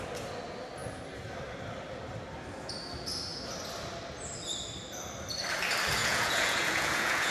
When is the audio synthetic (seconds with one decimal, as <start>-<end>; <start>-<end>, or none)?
6.0-7.3